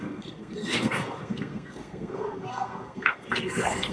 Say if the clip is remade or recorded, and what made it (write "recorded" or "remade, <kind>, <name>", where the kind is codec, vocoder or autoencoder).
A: remade, codec, SNAC